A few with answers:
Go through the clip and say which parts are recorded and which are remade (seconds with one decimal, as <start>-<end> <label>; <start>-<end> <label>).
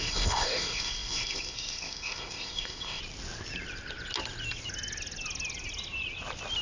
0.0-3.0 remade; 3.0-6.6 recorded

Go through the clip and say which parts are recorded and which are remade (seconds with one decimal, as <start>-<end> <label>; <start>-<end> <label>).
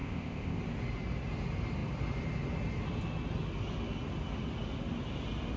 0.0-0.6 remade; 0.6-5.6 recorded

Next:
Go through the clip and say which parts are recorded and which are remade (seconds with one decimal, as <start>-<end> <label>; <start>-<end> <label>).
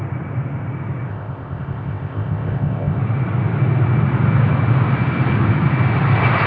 0.0-1.1 recorded; 1.1-3.0 remade; 3.0-6.5 recorded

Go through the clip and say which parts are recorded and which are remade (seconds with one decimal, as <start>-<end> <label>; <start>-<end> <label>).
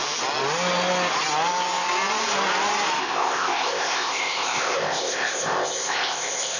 0.0-3.0 recorded; 3.0-6.6 remade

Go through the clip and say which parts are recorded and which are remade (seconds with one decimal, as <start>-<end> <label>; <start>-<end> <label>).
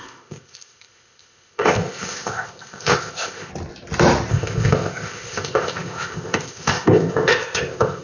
0.0-3.5 remade; 3.5-4.3 recorded; 4.3-8.0 remade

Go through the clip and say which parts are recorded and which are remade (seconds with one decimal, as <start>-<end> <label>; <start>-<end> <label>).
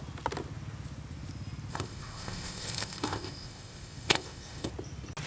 0.0-1.7 recorded; 1.7-4.7 remade; 4.7-5.3 recorded